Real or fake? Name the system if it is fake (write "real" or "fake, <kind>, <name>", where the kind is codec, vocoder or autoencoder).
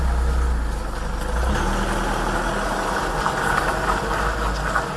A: real